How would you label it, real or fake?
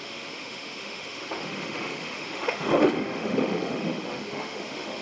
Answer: fake